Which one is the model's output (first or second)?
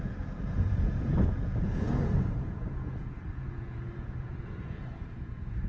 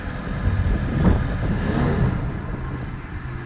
first